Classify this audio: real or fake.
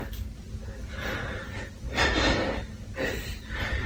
real